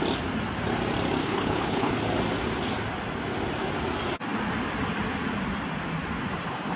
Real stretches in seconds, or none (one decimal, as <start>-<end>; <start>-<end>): 0.0-1.2; 1.9-6.8